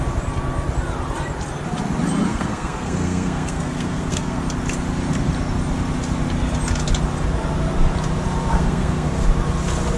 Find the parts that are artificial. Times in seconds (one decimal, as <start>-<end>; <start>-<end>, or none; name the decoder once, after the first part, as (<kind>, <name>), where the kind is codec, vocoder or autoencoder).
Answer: 2.3-4.4 (codec, SNAC); 8.5-9.1